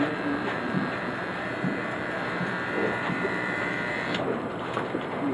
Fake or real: fake